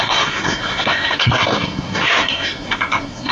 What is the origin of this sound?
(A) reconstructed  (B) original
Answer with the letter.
A